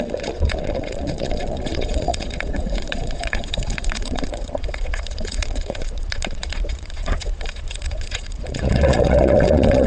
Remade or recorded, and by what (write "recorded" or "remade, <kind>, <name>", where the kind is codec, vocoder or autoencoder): remade, vocoder, Vocos